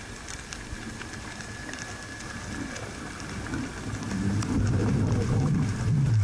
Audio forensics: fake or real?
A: real